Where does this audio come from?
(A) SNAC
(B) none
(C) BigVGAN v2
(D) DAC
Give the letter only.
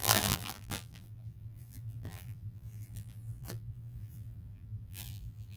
C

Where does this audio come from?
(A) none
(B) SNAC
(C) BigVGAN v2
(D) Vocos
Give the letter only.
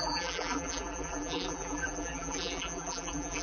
C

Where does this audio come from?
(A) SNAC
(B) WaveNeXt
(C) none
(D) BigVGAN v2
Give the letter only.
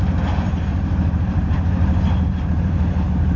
D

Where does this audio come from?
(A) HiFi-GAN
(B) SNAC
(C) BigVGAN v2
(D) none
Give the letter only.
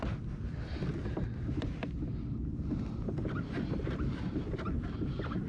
C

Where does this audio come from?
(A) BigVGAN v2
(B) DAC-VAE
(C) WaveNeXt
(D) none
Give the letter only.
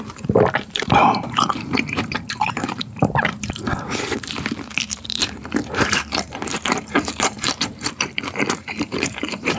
A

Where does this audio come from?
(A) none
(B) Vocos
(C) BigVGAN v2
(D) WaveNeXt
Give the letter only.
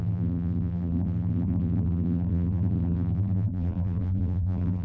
C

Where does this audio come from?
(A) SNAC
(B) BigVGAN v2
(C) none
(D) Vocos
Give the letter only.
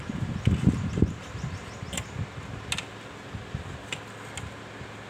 C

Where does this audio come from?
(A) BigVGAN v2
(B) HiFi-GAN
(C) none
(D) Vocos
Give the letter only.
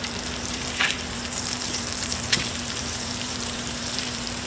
A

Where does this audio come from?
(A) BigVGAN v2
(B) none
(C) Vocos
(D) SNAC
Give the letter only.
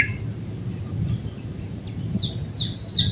A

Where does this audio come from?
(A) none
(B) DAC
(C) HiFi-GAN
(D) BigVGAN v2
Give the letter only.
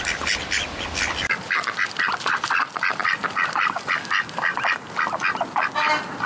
A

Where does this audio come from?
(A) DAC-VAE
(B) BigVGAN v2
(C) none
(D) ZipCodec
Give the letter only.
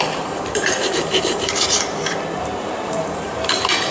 B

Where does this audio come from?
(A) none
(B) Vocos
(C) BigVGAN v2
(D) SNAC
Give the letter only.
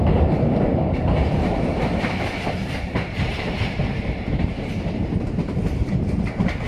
C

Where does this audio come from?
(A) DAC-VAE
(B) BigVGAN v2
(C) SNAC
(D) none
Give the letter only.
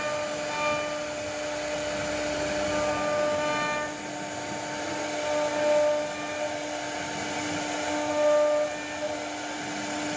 D